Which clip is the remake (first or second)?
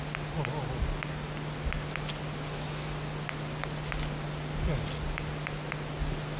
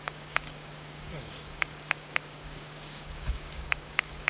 second